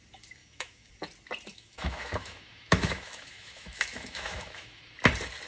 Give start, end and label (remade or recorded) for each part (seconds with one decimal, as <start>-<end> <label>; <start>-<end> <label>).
0.0-0.4 recorded; 0.4-0.9 remade; 0.9-1.5 recorded; 1.5-4.8 remade; 4.8-5.5 recorded